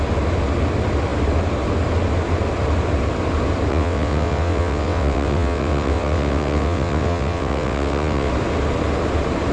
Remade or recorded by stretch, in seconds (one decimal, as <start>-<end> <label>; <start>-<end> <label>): 0.0-3.7 recorded; 3.7-8.3 remade; 8.3-9.5 recorded